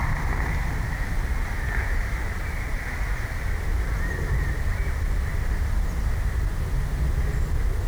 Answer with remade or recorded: recorded